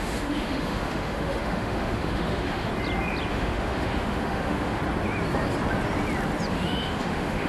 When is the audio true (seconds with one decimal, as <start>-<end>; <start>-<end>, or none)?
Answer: 2.7-3.3; 4.8-6.5